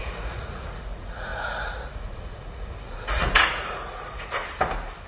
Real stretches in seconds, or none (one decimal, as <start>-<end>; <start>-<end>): 4.4-5.1